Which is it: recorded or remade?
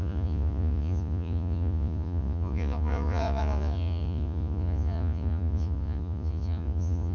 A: remade